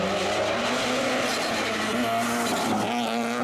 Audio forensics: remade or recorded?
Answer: recorded